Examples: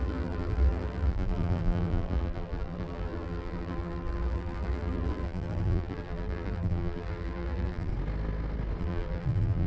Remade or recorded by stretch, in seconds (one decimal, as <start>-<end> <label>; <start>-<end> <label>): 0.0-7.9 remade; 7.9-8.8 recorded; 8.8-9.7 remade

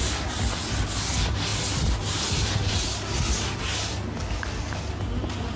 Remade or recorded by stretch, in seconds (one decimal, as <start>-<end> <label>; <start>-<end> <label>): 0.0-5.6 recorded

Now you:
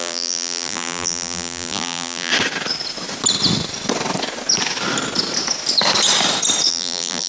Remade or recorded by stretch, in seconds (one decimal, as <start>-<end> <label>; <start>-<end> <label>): 0.0-2.3 remade; 2.3-6.7 recorded; 6.7-7.3 remade